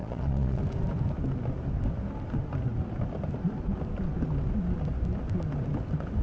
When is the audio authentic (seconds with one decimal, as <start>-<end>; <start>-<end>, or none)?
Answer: 0.6-6.2